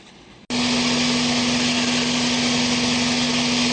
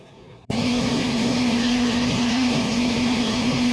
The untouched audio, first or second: first